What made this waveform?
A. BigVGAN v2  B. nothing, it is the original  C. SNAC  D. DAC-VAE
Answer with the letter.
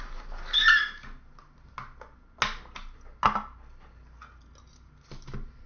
B